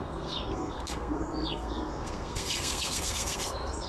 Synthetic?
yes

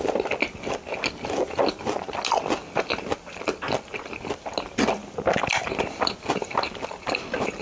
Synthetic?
no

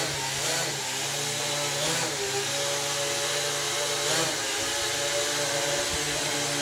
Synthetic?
no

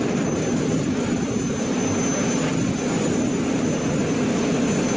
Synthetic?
no